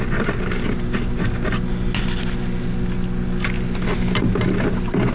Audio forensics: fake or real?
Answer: real